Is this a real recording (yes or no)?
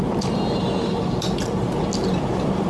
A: yes